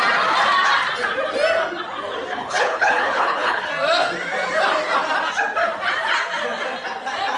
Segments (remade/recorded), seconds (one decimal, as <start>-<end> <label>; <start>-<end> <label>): 0.0-2.3 recorded; 2.3-3.7 remade; 3.7-7.4 recorded